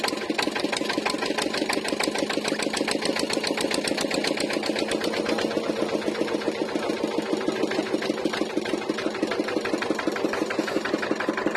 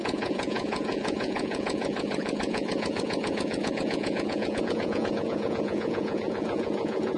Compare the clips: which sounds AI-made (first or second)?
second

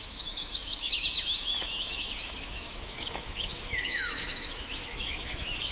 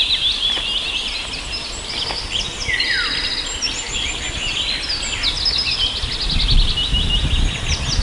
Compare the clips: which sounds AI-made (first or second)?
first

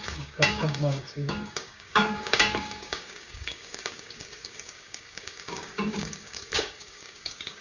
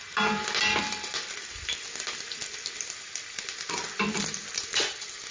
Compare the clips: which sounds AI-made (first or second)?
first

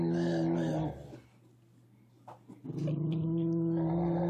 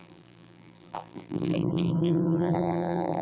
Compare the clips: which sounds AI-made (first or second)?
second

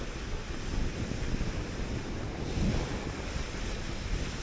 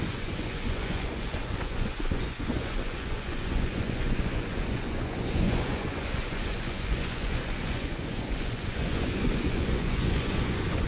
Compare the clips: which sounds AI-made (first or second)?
second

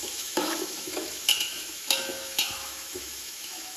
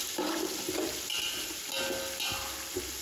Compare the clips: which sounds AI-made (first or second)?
first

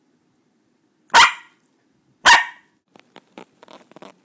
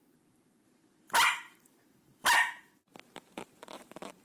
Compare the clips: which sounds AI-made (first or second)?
second